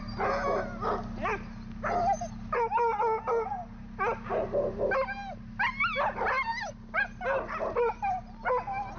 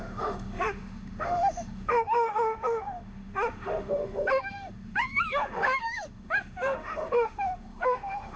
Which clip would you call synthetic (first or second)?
second